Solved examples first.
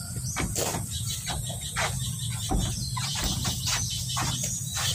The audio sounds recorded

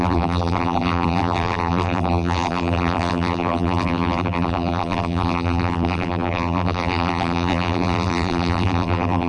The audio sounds remade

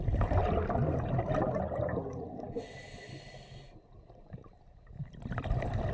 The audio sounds recorded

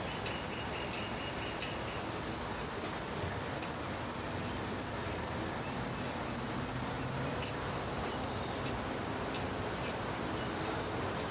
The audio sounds recorded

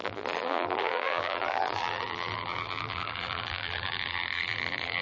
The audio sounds remade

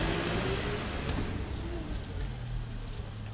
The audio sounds recorded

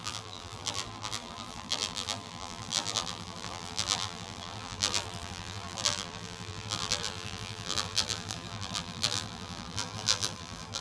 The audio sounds remade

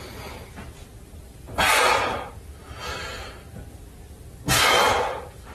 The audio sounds recorded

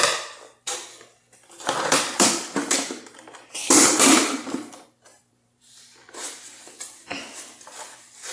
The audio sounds remade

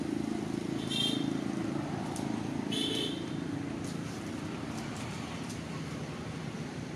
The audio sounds remade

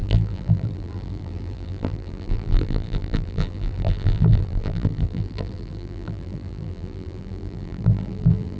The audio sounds remade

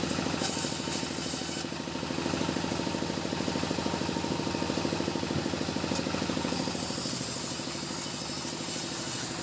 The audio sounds recorded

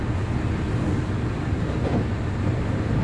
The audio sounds recorded